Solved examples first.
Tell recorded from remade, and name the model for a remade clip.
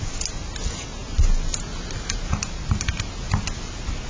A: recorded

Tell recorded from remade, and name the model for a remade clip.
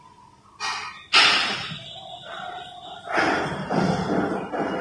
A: recorded